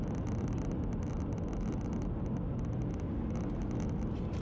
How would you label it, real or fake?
real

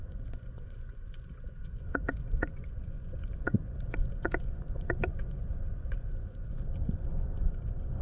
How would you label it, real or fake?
fake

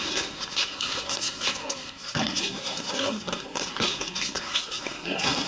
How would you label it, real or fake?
fake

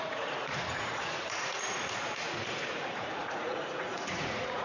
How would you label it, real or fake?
fake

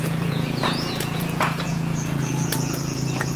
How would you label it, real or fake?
fake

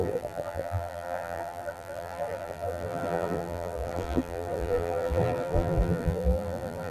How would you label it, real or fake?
fake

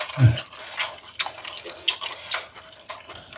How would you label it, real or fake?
real